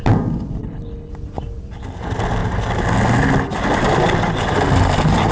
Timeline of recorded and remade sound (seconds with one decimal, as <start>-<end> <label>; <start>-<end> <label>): 0.0-0.6 recorded; 0.6-1.1 remade; 1.1-5.3 recorded